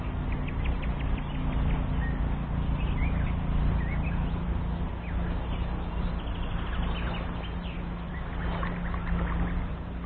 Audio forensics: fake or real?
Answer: real